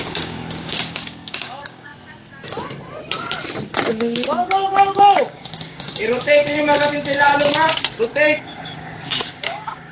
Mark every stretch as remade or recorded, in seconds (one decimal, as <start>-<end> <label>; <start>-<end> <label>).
0.0-1.9 remade; 1.9-3.9 recorded; 3.9-7.3 remade; 7.3-8.4 recorded; 8.4-9.9 remade